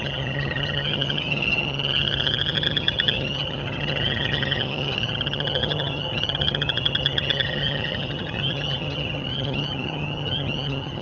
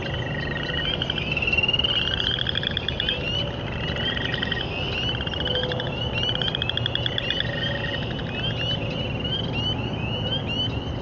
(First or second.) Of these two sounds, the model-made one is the first